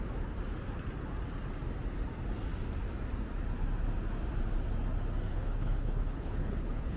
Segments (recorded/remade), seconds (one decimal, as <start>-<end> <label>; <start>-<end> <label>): 0.0-5.3 recorded; 5.3-7.0 remade